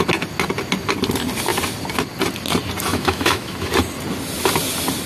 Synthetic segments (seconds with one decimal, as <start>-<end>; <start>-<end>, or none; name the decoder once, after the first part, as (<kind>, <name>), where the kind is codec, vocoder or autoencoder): 2.9-3.7 (autoencoder, DAC-VAE)